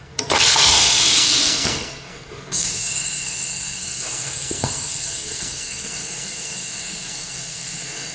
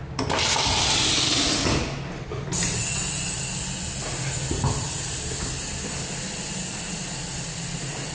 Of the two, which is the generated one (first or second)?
first